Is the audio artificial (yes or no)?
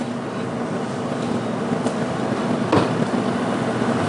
no